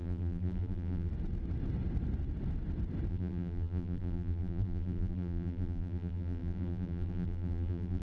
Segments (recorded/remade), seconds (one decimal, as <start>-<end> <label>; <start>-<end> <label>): 0.0-1.1 remade; 1.1-3.1 recorded; 3.1-8.0 remade